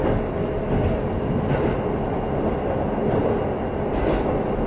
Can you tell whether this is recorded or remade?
recorded